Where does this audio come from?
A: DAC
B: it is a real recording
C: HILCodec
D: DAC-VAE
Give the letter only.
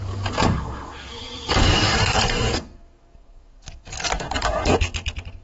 A